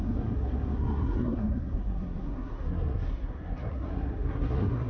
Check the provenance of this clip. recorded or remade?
remade